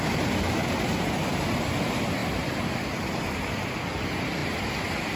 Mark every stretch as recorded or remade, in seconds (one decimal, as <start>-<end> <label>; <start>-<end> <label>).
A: 0.0-5.2 recorded

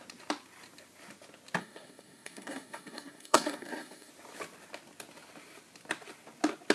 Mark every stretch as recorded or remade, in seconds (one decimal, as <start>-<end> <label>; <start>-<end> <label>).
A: 0.0-1.6 recorded; 1.6-4.1 remade; 4.1-6.7 recorded

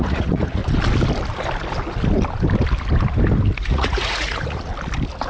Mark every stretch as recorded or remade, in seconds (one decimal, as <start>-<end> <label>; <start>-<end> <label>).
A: 0.0-0.6 remade; 0.6-3.6 recorded; 3.6-4.7 remade; 4.7-5.3 recorded

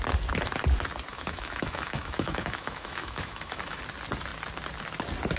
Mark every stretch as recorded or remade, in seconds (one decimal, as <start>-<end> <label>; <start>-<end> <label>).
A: 0.0-1.1 recorded; 1.1-3.8 remade; 3.8-5.4 recorded

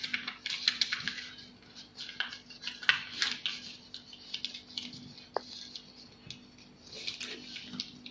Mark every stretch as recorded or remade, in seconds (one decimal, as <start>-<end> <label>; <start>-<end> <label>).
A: 0.0-8.1 recorded

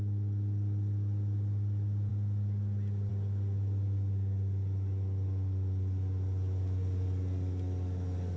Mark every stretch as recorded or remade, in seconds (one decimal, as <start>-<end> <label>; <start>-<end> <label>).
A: 0.0-8.4 recorded